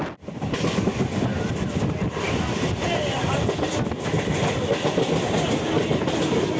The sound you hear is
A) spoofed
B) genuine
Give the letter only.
B